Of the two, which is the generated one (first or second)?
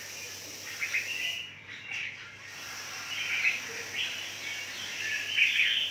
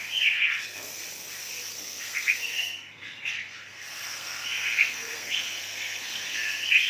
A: second